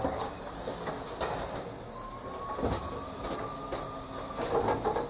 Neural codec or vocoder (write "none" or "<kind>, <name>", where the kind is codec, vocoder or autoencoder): none